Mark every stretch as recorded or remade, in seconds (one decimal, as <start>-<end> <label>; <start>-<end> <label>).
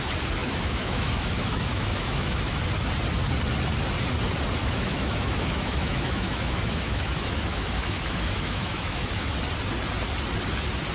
0.0-0.4 recorded; 0.4-2.6 remade; 2.6-4.6 recorded; 4.6-9.3 remade; 9.3-10.9 recorded